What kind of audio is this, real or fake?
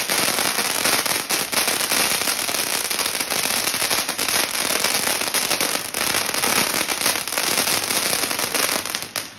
real